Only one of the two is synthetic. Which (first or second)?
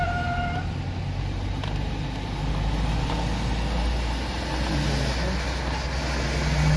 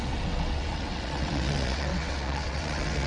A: second